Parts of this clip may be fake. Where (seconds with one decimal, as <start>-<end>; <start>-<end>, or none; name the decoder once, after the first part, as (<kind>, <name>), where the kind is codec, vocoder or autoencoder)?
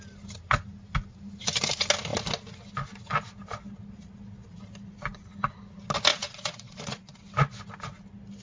6.1-7.2 (vocoder, Vocos)